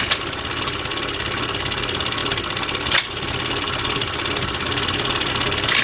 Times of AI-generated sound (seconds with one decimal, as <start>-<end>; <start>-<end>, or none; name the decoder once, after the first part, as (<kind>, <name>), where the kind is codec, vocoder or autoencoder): none